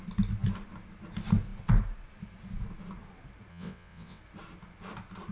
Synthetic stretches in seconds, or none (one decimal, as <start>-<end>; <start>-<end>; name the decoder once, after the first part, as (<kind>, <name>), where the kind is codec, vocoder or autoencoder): 3.5-4.2 (vocoder, WaveNeXt)